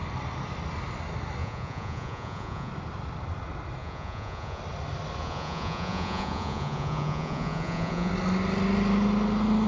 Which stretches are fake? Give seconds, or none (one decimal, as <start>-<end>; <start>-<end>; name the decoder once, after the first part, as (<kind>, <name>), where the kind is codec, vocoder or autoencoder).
1.4-2.7 (vocoder, Vocos); 3.8-4.6; 5.2-8.1